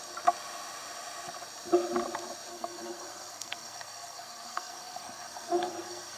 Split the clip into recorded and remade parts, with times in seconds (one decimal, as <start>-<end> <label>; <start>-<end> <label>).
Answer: 0.0-2.5 recorded; 2.5-6.2 remade